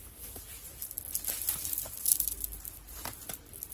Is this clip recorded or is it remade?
recorded